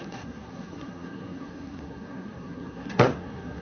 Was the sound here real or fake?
fake